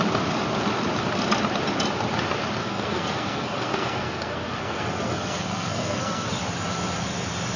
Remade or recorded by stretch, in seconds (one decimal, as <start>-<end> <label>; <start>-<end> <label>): 0.0-2.6 recorded; 2.6-6.3 remade; 6.3-7.6 recorded